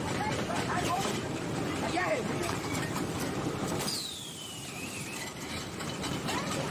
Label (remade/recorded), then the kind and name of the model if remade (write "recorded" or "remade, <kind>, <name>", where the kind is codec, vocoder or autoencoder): remade, vocoder, BigVGAN v2